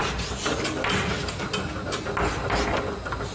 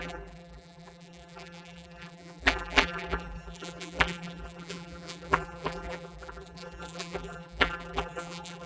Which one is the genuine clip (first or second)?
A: first